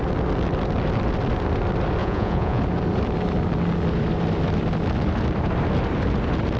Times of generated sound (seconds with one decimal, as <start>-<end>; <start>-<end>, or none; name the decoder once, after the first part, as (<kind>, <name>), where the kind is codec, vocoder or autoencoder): 2.0-2.6 (vocoder, Vocos)